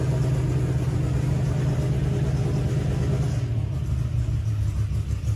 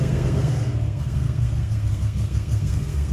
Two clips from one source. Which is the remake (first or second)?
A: second